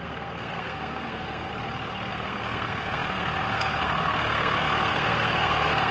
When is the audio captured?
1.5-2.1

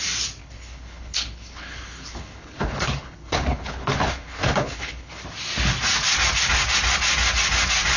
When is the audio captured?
0.0-0.4; 5.2-8.0